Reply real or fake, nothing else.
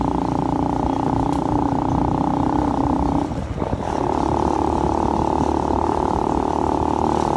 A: real